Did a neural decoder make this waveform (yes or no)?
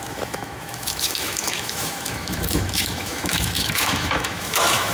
yes